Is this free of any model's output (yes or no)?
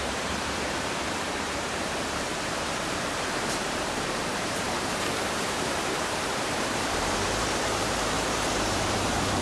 no